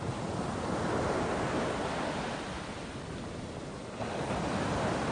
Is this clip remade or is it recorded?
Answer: recorded